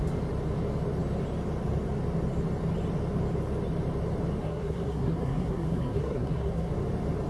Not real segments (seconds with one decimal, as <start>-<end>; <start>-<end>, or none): 4.4-6.7